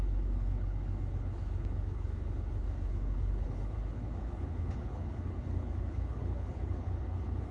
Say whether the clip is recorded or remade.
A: remade